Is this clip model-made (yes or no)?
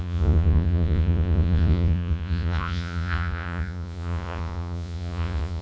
yes